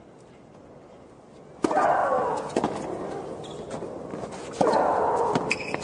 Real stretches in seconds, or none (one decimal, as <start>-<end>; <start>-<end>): 0.0-5.8